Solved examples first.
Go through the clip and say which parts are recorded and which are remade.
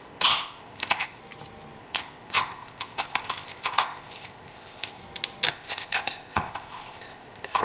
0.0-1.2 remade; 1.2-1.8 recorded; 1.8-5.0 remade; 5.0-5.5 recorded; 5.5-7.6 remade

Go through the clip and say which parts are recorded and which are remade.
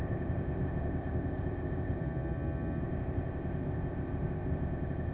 0.0-2.0 remade; 2.0-2.8 recorded; 2.8-5.1 remade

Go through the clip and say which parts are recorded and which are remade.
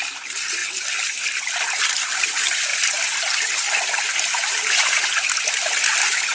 0.0-6.3 recorded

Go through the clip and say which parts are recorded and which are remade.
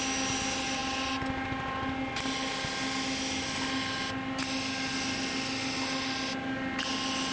0.0-7.3 recorded